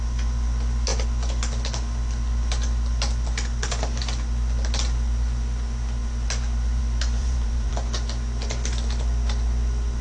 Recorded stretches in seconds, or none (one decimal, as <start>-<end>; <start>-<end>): 0.0-7.2; 7.7-10.0